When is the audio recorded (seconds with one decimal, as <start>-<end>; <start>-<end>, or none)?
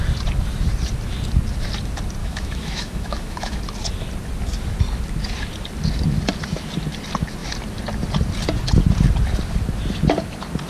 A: 0.0-2.2; 3.6-10.7